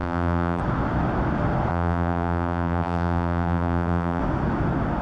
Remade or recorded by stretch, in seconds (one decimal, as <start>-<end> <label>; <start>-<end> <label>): 0.0-0.6 remade; 0.6-1.7 recorded; 1.7-4.2 remade; 4.2-5.0 recorded